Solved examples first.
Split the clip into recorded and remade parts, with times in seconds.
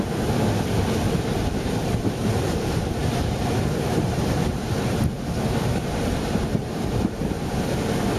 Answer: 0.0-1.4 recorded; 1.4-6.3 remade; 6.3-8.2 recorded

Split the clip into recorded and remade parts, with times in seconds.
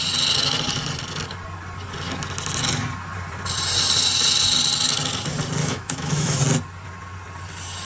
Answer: 0.0-5.6 recorded; 5.6-6.4 remade; 6.4-7.8 recorded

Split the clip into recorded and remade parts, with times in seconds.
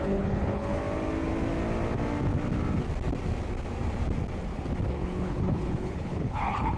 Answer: 0.0-0.8 remade; 0.8-4.9 recorded; 4.9-6.8 remade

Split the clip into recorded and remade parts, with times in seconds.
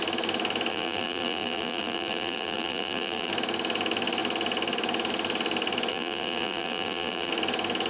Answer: 0.0-0.7 recorded; 0.7-3.3 remade; 3.3-5.9 recorded; 5.9-7.3 remade; 7.3-7.9 recorded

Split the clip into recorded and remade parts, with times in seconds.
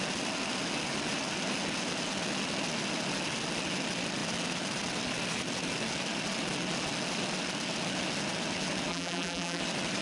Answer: 0.0-8.9 recorded; 8.9-9.6 remade; 9.6-10.0 recorded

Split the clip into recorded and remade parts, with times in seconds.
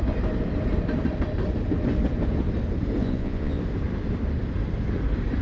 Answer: 0.0-3.0 recorded; 3.0-3.6 remade; 3.6-5.4 recorded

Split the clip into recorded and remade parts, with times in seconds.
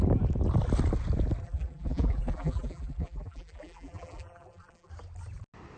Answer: 0.0-1.4 recorded; 1.4-4.9 remade; 4.9-5.8 recorded